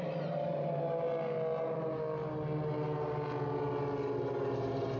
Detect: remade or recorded recorded